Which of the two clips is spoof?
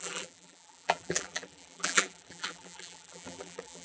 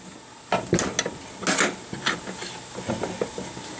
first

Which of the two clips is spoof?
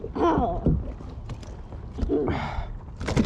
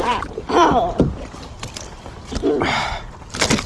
second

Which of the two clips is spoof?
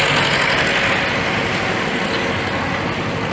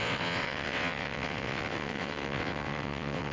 second